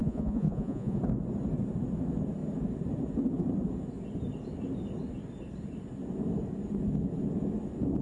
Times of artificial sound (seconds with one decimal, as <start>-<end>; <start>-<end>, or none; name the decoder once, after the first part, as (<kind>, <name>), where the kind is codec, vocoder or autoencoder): 0.0-1.0 (vocoder, Vocos)